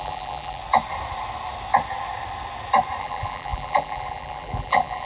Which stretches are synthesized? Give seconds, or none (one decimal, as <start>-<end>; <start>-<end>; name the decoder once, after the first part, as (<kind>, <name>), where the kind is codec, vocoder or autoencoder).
0.0-0.6 (vocoder, BigVGAN v2); 3.0-5.1